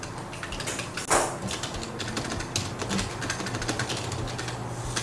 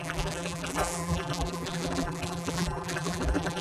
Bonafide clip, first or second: first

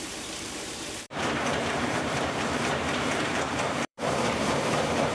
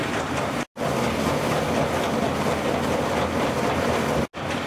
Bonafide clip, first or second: second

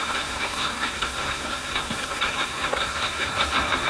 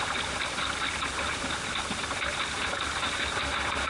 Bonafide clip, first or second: second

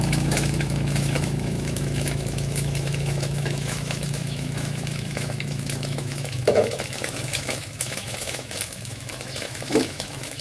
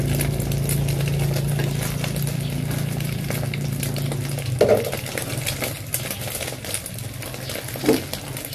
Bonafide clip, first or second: second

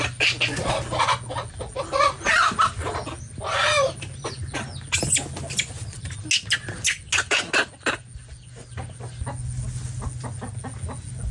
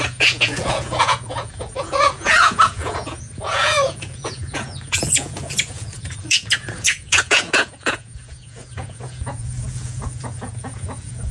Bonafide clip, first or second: first